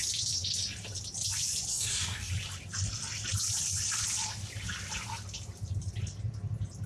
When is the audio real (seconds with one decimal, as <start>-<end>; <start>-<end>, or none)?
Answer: 0.0-1.7; 2.3-6.9